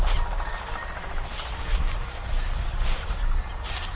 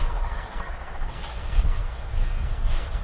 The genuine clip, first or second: first